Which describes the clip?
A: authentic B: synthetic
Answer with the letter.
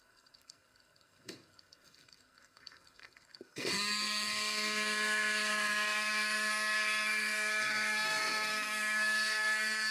B